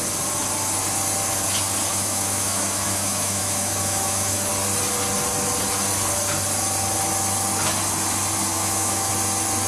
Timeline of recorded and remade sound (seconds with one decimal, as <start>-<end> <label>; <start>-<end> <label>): 0.0-1.9 recorded; 1.9-4.5 remade; 4.5-8.5 recorded; 8.5-9.1 remade; 9.1-9.7 recorded